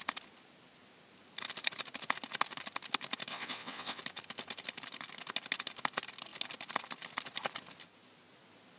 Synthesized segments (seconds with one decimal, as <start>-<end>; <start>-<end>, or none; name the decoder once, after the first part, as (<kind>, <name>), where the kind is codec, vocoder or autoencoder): 3.3-4.0 (vocoder, WaveNeXt)